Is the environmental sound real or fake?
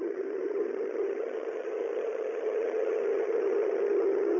fake